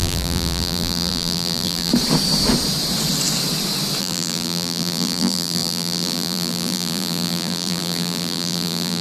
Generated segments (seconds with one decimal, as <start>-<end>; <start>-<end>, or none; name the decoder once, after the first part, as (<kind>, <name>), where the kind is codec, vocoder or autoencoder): 0.0-1.9 (vocoder, BigVGAN v2); 4.0-9.0